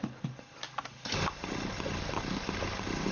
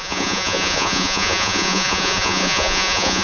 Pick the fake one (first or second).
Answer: second